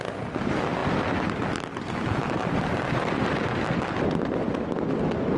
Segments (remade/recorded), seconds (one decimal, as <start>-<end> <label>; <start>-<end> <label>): 0.0-5.4 recorded